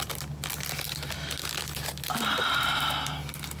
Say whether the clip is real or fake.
real